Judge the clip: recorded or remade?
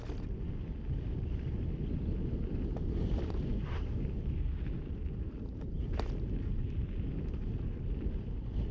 recorded